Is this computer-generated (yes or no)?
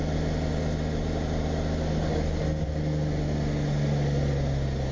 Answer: no